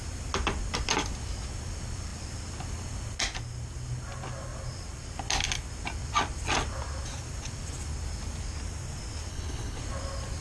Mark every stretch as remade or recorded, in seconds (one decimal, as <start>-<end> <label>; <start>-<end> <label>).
0.0-9.3 recorded; 9.3-9.8 remade; 9.8-10.4 recorded